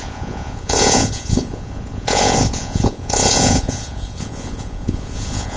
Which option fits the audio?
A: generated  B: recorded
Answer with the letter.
A